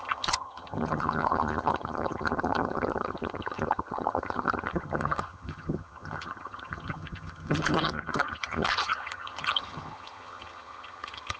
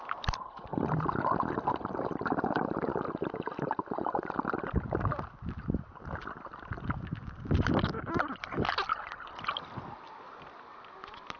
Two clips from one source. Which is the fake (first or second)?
first